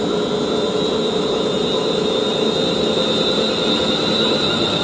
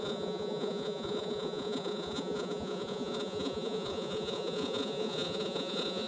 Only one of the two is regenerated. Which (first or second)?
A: second